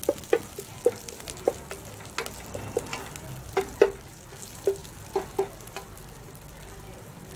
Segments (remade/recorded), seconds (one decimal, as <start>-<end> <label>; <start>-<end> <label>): 0.0-7.4 recorded